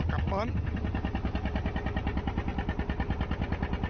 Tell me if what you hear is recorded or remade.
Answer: recorded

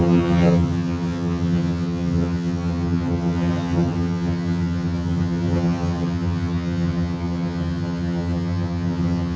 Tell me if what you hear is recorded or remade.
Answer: remade